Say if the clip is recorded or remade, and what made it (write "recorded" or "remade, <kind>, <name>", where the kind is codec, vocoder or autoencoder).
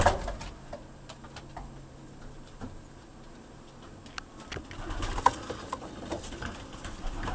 recorded